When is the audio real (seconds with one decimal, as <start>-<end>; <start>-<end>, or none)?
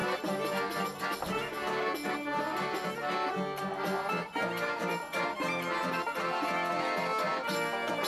0.0-8.1